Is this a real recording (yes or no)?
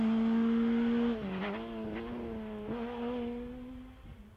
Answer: yes